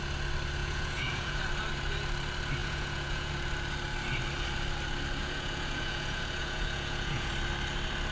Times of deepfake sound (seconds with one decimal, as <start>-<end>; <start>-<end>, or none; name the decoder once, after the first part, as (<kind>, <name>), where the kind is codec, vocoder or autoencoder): 0.6-1.4 (vocoder, Vocos); 2.6-3.3; 5.2-7.3